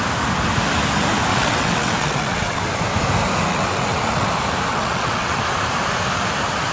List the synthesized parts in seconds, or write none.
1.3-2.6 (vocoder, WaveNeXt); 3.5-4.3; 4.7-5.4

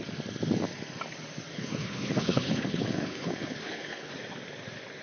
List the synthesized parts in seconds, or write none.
1.5-4.1 (codec, HILCodec)

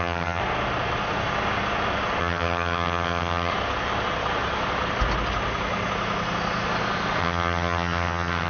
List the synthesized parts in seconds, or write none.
0.0-0.4 (vocoder, HiFi-GAN); 2.2-3.5; 7.2-8.5

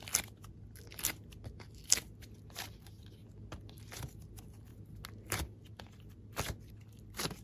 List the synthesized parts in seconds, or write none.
none

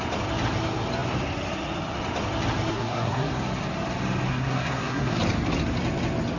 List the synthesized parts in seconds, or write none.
2.7-3.3 (codec, SNAC); 4.3-5.2